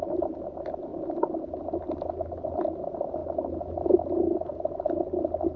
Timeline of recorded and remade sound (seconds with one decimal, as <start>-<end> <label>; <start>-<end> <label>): 0.0-5.6 recorded